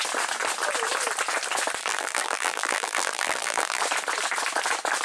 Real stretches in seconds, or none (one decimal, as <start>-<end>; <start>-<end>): 0.0-1.8; 3.8-5.0